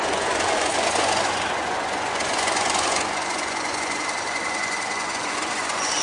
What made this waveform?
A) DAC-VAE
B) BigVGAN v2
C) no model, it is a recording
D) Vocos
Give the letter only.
D